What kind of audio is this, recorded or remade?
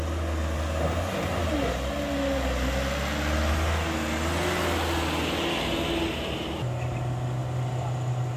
recorded